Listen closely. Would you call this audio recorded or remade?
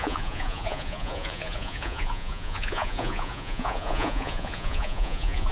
remade